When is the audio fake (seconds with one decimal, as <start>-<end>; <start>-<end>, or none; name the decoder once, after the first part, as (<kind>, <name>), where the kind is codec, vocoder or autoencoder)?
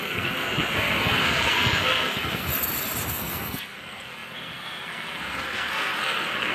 0.0-2.5 (codec, SNAC); 3.1-6.5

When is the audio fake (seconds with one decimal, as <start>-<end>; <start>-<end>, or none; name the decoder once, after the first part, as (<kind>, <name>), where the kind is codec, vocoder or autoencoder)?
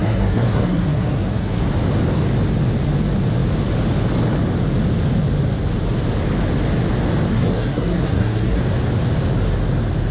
0.0-1.6 (codec, SNAC); 7.3-8.6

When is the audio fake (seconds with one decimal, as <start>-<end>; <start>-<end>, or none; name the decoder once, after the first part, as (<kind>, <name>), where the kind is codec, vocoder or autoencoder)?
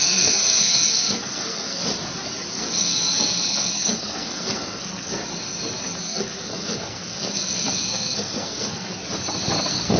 0.0-1.8 (codec, SNAC); 2.5-5.2; 6.0-9.0; 9.6-10.0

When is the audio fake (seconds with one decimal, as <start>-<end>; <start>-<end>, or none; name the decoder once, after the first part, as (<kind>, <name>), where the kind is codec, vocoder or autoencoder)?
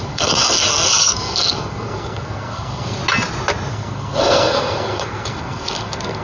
0.0-3.0 (codec, SNAC); 3.7-6.2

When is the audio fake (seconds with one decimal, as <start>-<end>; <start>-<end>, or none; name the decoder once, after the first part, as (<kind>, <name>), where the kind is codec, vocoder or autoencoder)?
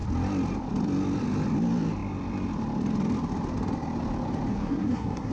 4.5-5.3 (codec, SNAC)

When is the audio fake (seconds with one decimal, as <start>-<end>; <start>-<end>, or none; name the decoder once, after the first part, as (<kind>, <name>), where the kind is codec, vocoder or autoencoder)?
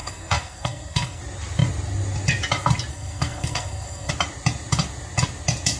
0.0-1.2 (codec, SNAC); 2.9-4.1